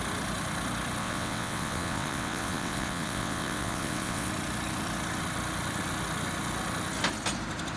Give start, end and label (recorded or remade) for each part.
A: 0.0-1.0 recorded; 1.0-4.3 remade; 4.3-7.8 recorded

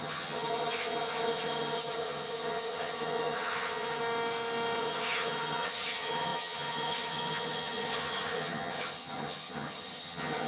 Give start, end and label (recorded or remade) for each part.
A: 0.0-4.0 remade; 4.0-4.8 recorded; 4.8-10.5 remade

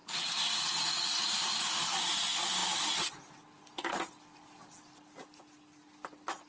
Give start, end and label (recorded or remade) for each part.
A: 0.0-6.5 recorded

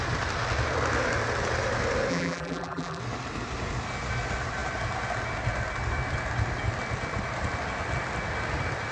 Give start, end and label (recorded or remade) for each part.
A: 0.0-2.1 recorded; 2.1-3.0 remade; 3.0-8.9 recorded

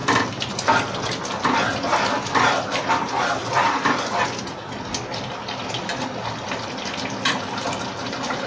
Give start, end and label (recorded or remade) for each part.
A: 0.0-2.9 recorded; 2.9-3.4 remade; 3.4-8.1 recorded; 8.1-8.5 remade

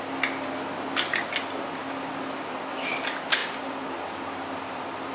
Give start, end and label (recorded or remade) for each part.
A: 0.0-5.1 recorded